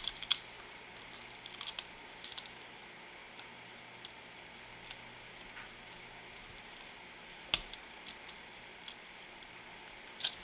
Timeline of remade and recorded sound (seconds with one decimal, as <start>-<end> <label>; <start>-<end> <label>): 0.0-3.2 recorded; 3.2-4.6 remade; 4.6-8.7 recorded; 8.7-9.5 remade; 9.5-10.4 recorded